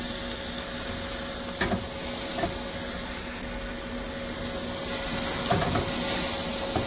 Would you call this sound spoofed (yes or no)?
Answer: no